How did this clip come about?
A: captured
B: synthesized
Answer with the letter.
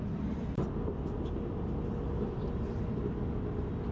A